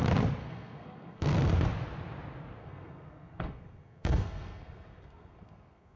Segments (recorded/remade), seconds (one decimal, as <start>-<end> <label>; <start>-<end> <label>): 0.0-0.4 recorded; 0.4-1.5 remade; 1.5-2.6 recorded; 2.6-6.0 remade